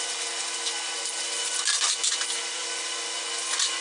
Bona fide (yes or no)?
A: yes